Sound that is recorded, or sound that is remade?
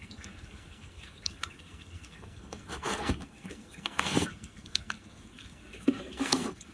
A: remade